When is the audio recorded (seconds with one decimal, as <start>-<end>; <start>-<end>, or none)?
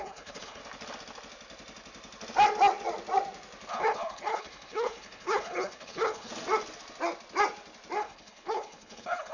0.6-3.7; 6.3-8.0